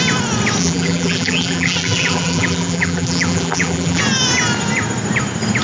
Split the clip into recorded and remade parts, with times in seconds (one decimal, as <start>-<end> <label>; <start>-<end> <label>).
0.0-0.6 recorded; 0.6-4.0 remade; 4.0-5.6 recorded